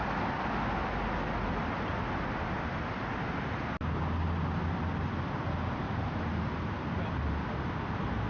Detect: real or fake real